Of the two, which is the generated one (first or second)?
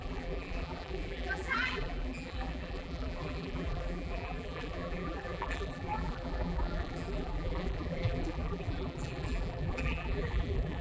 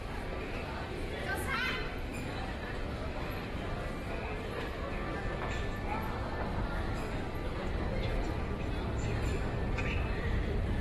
first